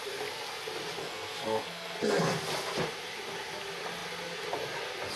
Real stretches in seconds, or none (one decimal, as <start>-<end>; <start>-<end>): 0.0-1.0; 2.0-5.2